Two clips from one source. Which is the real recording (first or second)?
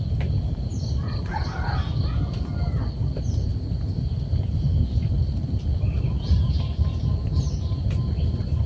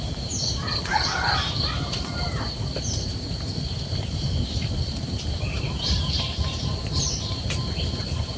first